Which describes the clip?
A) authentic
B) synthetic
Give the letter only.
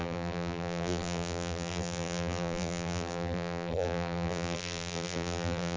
B